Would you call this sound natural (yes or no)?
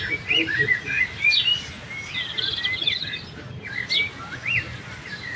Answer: yes